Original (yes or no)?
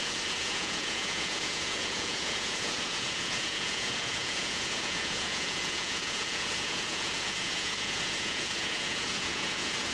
no